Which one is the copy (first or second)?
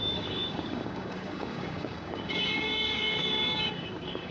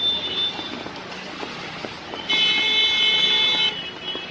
first